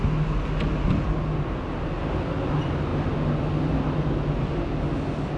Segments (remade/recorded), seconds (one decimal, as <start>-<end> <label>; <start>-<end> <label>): 0.0-2.9 recorded; 2.9-4.9 remade; 4.9-5.4 recorded

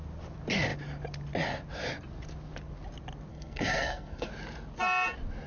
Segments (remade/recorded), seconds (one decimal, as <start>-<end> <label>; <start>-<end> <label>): 0.0-3.3 recorded; 3.3-4.3 remade; 4.3-5.5 recorded